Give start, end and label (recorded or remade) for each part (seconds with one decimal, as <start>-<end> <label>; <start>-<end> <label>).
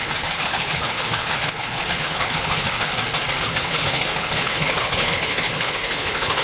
0.0-2.9 remade; 2.9-3.4 recorded; 3.4-6.4 remade